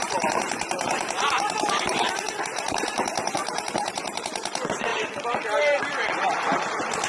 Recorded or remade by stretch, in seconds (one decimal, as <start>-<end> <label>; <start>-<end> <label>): 0.0-4.9 remade; 4.9-7.1 recorded